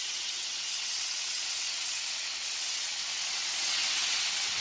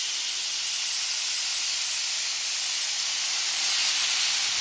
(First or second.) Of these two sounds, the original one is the second